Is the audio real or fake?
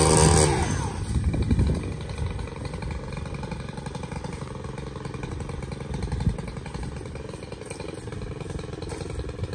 real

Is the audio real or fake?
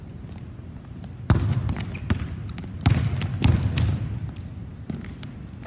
real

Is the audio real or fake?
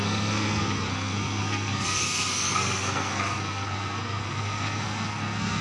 fake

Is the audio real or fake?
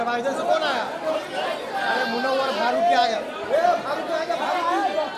real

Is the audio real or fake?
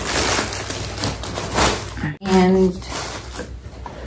real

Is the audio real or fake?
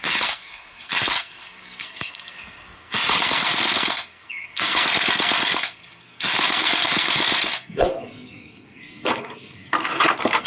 fake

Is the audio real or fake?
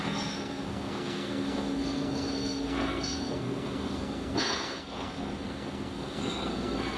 fake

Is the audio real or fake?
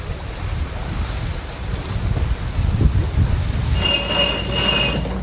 real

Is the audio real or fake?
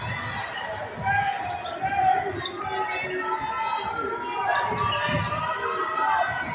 real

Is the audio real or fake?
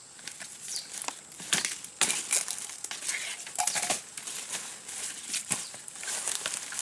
real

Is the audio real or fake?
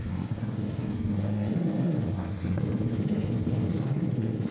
fake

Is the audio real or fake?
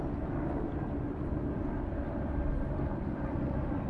real